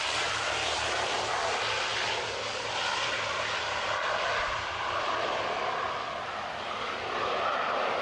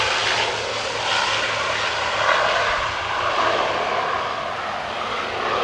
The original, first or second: second